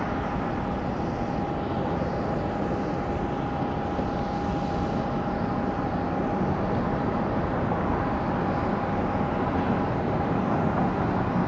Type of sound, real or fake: real